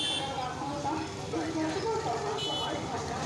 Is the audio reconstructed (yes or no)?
no